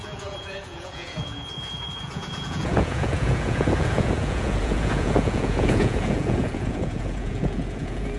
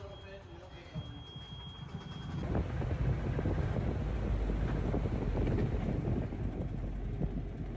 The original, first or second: second